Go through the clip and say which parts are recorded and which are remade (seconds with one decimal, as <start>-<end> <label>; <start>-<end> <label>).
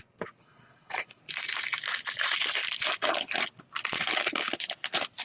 0.0-0.4 recorded; 0.4-1.2 remade; 1.2-5.2 recorded